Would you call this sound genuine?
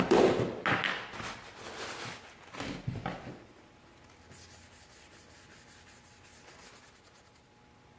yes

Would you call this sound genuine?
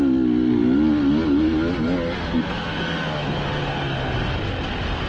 yes